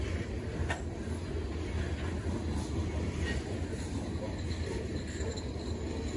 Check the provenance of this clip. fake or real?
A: real